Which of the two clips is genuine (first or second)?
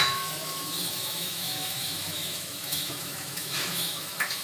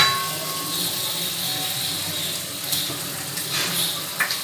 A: second